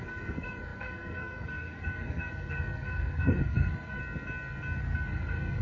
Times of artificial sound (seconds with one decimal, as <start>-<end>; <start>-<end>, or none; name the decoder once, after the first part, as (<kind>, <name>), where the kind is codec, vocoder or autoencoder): 0.0-4.0 (codec, SNAC); 4.8-5.6